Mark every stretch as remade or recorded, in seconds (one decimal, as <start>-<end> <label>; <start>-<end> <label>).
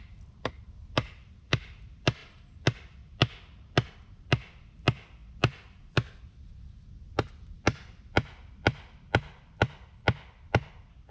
0.0-11.1 recorded